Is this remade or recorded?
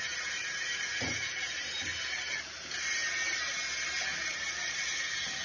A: recorded